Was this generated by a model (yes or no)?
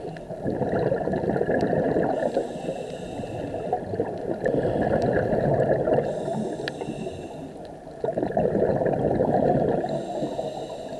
no